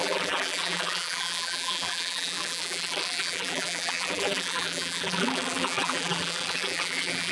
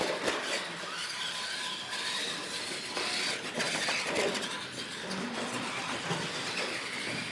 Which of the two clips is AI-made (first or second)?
first